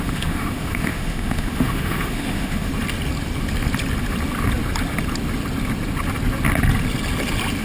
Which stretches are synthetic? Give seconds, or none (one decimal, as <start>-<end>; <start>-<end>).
0.0-2.7